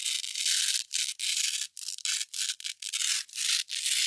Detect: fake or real real